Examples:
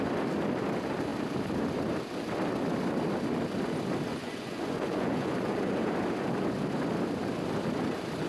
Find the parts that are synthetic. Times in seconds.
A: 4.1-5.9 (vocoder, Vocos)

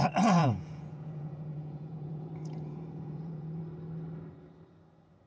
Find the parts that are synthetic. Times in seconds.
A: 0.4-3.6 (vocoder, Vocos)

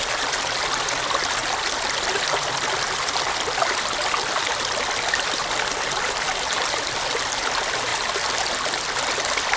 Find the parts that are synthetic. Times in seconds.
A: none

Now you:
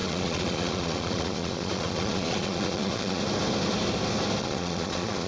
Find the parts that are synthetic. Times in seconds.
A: 0.0-3.2 (vocoder, Vocos); 4.4-5.3